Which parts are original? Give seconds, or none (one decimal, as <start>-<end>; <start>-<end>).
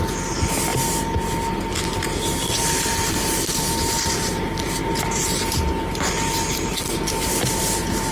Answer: 0.0-8.1